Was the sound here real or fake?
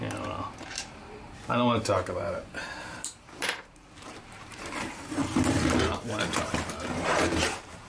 fake